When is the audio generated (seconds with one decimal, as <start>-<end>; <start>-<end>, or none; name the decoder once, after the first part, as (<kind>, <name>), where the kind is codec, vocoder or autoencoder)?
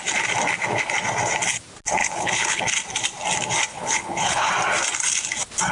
2.0-2.6 (codec, HILCodec); 3.7-4.5